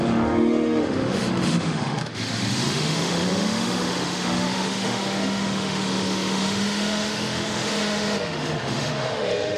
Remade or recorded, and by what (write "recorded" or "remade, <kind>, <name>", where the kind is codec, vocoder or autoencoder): remade, autoencoder, DAC-VAE